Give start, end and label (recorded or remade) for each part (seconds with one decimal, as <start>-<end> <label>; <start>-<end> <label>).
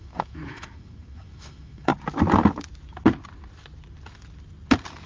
0.0-1.9 remade; 1.9-5.1 recorded